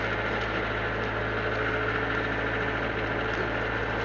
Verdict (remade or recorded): recorded